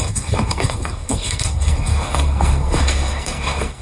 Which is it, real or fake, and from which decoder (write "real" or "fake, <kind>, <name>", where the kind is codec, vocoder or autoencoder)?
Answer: fake, codec, SNAC